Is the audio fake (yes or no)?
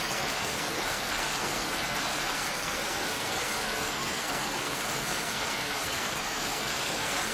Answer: yes